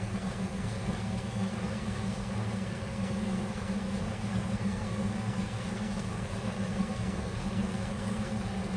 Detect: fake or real fake